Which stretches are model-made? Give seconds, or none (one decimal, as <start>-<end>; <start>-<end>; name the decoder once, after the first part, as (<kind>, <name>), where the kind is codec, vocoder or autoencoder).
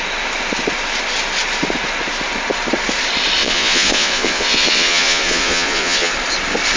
3.4-6.1 (vocoder, Vocos)